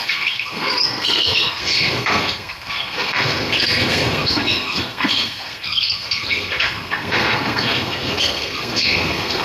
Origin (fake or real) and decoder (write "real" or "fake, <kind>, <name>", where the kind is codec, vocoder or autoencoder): fake, codec, SNAC